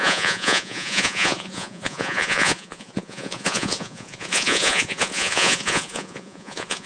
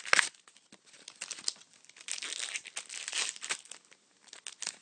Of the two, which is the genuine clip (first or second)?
second